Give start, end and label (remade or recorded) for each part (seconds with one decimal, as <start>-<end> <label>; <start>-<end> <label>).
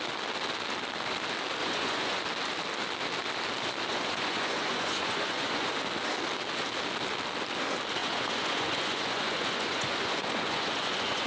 0.0-1.6 recorded; 1.6-2.2 remade; 2.2-3.9 recorded; 3.9-5.7 remade; 5.7-8.0 recorded; 8.0-11.3 remade